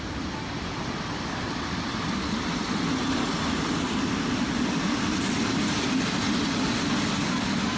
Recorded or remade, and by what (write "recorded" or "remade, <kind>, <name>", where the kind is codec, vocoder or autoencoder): recorded